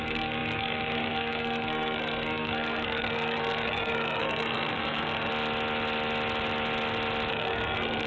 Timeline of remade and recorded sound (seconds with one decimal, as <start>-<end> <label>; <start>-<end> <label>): 0.0-5.3 remade; 5.3-7.3 recorded; 7.3-8.1 remade